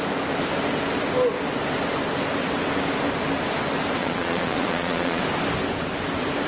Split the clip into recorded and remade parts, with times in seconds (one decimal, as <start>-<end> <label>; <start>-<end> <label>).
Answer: 0.0-4.0 recorded; 4.0-5.2 remade; 5.2-6.5 recorded